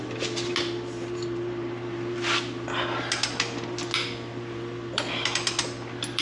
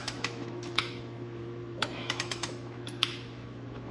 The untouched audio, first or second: first